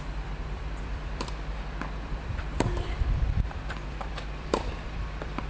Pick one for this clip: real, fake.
fake